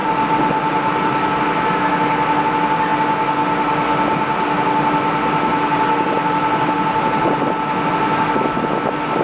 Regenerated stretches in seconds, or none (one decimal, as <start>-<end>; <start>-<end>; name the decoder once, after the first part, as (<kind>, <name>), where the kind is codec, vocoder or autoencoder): 0.0-1.4 (vocoder, BigVGAN v2)

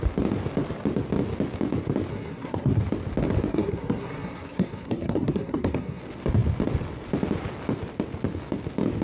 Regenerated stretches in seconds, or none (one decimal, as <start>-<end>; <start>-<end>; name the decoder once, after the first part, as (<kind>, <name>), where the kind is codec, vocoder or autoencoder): 2.1-2.8 (codec, SNAC); 3.5-6.0

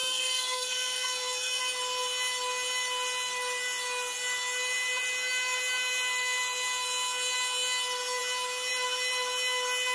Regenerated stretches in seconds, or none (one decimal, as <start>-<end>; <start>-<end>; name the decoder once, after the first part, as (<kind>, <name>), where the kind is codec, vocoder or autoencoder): 0.0-1.6 (codec, SNAC)